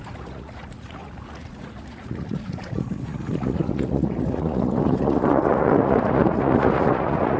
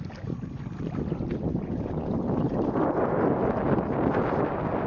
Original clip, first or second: second